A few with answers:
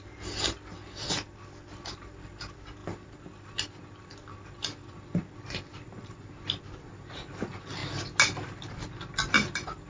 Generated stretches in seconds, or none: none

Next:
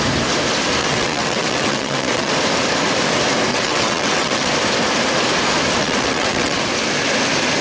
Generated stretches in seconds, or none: 0.8-2.3 (vocoder, WaveNeXt); 3.5-4.5; 5.8-6.6

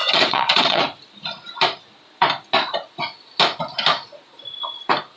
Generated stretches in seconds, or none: 0.0-0.8 (vocoder, WaveNeXt)

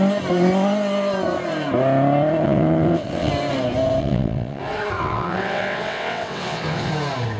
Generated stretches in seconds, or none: 2.4-3.3 (vocoder, WaveNeXt); 4.0-4.6; 5.0-6.9

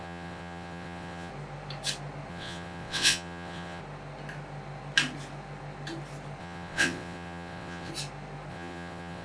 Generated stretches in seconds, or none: 0.0-1.3 (vocoder, WaveNeXt); 2.3-3.8; 6.4-7.9; 8.5-9.2

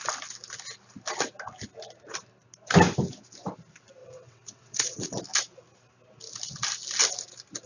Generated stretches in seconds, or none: 4.0-5.2 (vocoder, WaveNeXt)

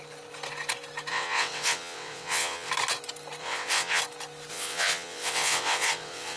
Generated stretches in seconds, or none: 1.1-2.7 (vocoder, WaveNeXt); 3.4-4.0; 4.5-6.4